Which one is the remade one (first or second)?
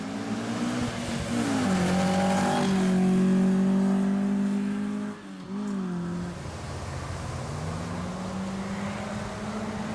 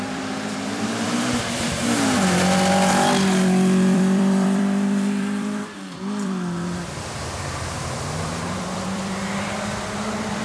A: second